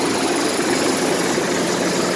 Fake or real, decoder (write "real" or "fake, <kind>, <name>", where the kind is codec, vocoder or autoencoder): real